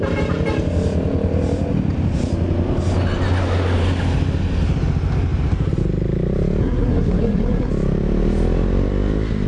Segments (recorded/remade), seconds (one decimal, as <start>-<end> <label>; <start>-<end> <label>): 0.0-6.6 recorded; 6.6-7.7 remade; 7.7-9.5 recorded